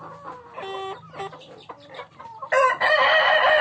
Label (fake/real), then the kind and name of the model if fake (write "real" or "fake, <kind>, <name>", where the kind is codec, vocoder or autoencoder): real